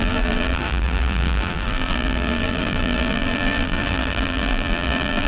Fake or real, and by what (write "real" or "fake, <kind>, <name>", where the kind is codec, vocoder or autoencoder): fake, vocoder, BigVGAN v2